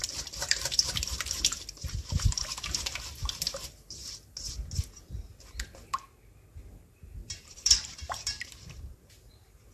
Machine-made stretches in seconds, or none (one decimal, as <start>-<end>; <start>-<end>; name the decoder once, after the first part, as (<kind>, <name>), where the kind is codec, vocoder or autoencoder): 0.0-2.4 (vocoder, BigVGAN v2); 6.7-9.7